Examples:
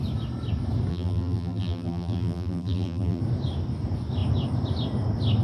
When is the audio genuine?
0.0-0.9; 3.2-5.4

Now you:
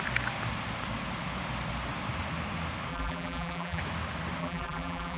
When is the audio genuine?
0.0-2.9; 3.8-4.4

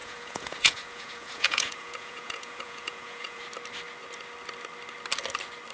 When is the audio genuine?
3.4-5.7

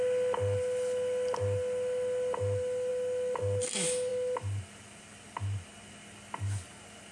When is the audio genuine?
0.0-7.1